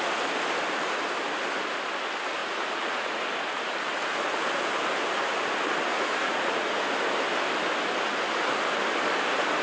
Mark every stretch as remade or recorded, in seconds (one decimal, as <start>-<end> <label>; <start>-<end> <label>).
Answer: 0.0-2.4 recorded; 2.4-3.2 remade; 3.2-5.9 recorded; 5.9-6.8 remade; 6.8-9.6 recorded